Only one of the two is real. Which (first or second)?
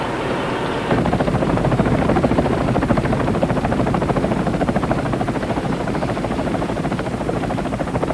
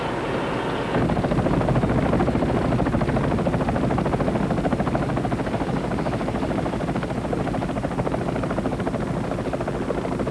second